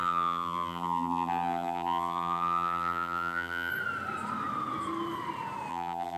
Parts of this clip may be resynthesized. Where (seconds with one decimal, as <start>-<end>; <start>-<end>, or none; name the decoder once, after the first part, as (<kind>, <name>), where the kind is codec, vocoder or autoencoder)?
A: 0.0-3.7 (vocoder, BigVGAN v2); 5.7-6.2